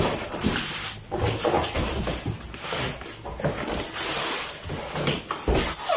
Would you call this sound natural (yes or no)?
yes